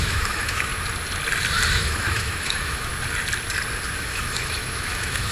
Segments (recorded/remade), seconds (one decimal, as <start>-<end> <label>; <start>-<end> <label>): 0.0-0.7 remade; 0.7-1.7 recorded; 1.7-2.9 remade; 2.9-4.0 recorded; 4.0-5.3 remade